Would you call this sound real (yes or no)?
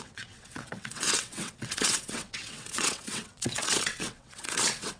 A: no